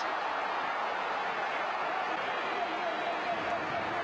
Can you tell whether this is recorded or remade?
recorded